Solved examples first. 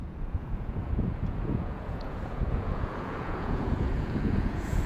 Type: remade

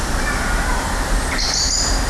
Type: recorded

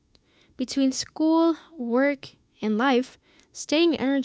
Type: remade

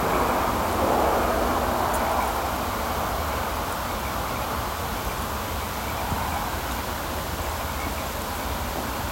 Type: recorded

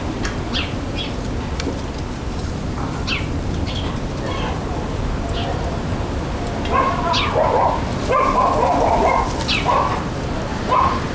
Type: recorded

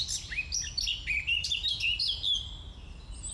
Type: recorded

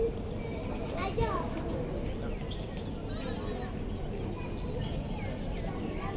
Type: recorded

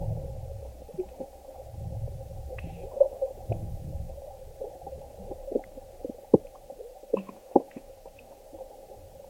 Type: recorded